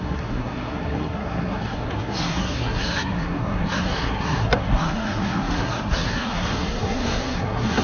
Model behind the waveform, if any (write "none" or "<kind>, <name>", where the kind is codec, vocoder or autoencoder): codec, SNAC